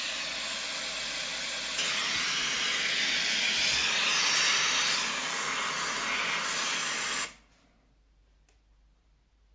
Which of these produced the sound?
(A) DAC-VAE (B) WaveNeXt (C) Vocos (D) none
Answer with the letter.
D